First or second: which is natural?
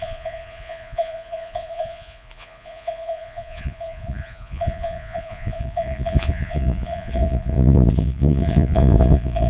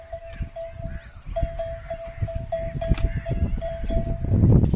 second